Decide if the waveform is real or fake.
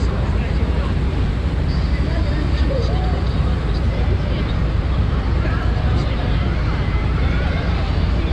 fake